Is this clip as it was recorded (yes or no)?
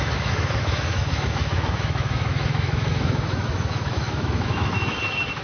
no